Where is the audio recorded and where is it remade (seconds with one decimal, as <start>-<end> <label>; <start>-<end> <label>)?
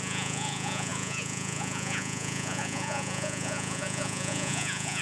0.0-5.0 remade